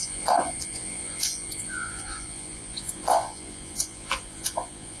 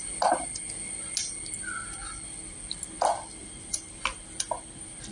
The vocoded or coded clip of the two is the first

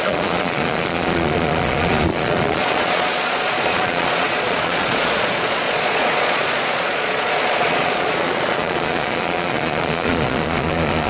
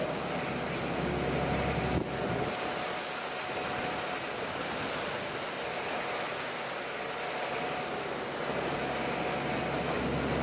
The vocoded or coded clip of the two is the first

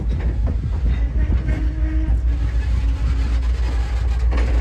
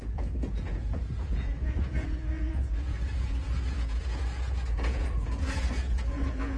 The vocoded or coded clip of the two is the second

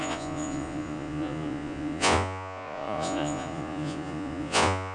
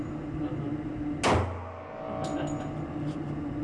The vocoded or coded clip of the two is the first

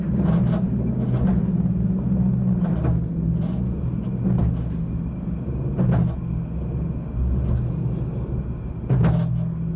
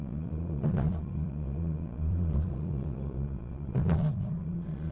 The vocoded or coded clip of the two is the second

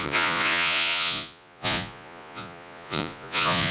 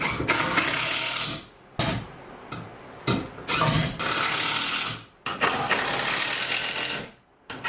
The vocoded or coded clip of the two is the first